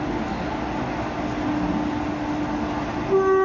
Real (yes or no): yes